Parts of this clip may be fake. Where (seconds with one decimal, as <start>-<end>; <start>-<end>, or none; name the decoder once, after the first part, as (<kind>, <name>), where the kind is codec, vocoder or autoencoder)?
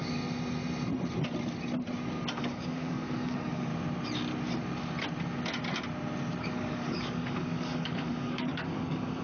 2.3-3.7 (codec, DAC); 6.4-9.2